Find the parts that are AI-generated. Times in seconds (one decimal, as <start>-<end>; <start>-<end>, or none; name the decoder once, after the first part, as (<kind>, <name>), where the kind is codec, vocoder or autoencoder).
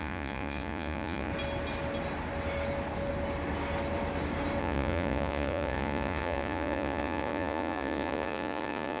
0.0-1.3 (vocoder, Vocos); 4.6-9.0